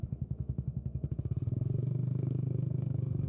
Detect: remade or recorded remade